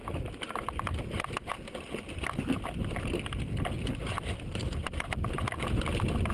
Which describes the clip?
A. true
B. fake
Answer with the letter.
A